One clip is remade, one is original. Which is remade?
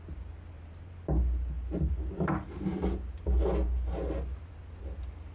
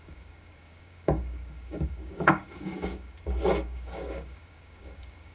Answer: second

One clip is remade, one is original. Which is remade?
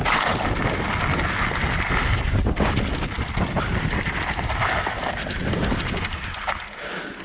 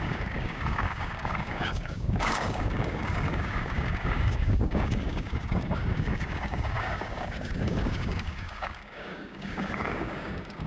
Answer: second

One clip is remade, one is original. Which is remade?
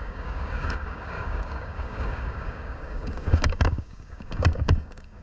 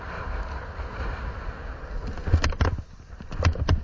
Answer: first